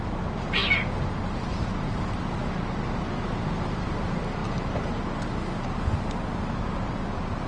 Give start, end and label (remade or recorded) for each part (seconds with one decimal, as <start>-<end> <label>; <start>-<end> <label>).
0.0-7.5 recorded